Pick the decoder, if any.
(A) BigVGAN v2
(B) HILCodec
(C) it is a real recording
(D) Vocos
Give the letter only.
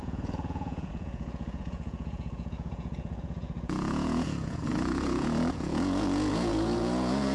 D